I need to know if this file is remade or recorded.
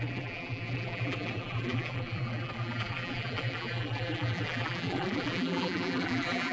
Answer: remade